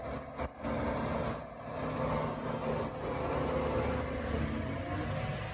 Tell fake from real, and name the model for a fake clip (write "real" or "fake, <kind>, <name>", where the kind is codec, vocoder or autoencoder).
real